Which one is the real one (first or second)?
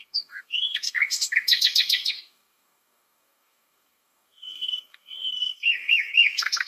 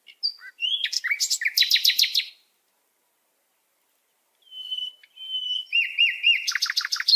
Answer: second